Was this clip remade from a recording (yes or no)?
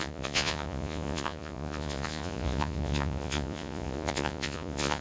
yes